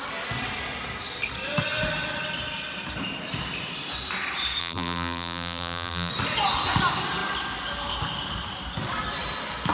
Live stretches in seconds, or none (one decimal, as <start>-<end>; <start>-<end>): 0.0-4.6; 6.1-9.7